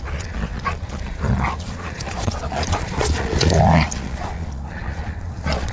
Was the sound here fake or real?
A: fake